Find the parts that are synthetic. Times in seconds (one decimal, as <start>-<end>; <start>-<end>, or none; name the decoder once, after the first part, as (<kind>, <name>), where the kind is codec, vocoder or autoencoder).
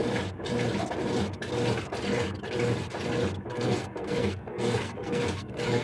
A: 3.5-5.8 (codec, SNAC)